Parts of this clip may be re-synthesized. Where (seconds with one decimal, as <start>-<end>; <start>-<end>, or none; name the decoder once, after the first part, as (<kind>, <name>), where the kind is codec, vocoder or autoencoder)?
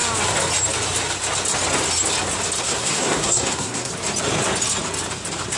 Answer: 2.6-3.9 (codec, SNAC)